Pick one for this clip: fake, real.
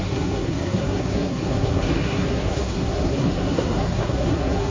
fake